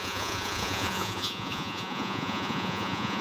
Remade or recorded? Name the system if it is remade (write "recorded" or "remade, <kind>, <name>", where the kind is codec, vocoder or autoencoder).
remade, vocoder, Vocos